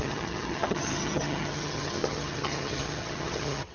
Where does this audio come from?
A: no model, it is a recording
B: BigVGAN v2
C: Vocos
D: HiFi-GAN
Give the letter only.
D